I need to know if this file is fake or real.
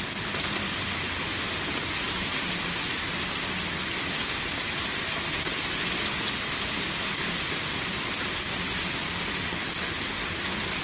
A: real